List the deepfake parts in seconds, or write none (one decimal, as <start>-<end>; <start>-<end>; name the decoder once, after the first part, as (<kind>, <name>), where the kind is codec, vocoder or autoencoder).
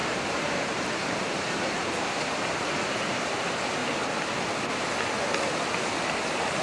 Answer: 0.0-3.8 (vocoder, BigVGAN v2)